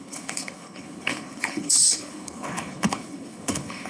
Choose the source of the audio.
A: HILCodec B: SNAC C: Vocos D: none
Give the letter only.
A